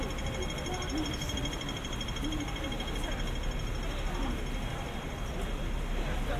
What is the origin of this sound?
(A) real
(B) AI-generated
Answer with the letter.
A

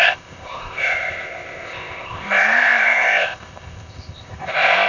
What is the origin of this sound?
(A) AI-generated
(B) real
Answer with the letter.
A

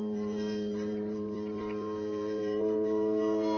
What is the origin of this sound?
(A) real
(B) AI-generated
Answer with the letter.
B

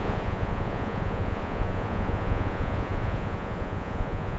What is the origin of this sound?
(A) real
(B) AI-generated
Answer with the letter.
B